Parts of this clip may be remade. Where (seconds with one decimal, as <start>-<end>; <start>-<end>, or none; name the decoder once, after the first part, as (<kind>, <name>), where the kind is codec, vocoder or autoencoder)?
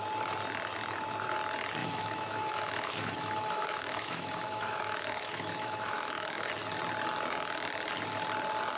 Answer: 1.8-6.5 (autoencoder, DAC-VAE)